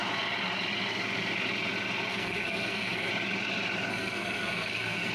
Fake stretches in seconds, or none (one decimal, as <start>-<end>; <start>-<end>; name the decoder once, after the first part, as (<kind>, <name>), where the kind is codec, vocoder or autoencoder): 2.1-3.1 (codec, SNAC); 3.9-5.1